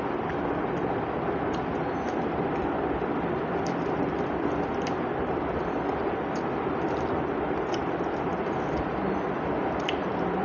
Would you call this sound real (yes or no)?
yes